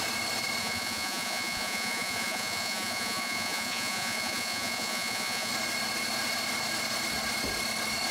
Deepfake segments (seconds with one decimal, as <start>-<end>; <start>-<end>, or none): 0.6-5.5